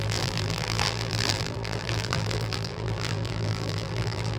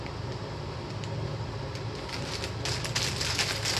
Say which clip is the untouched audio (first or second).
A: second